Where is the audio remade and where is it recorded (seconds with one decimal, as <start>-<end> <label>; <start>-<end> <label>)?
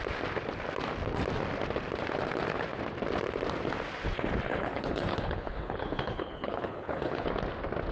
0.0-4.5 recorded; 4.5-7.3 remade; 7.3-7.9 recorded